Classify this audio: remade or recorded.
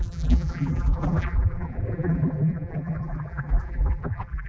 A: remade